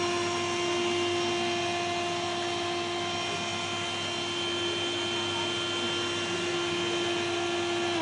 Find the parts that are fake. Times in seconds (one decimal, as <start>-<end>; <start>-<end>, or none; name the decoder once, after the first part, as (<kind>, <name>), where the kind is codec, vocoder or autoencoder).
none